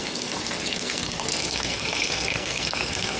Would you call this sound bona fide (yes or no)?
no